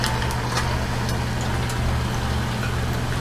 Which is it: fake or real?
real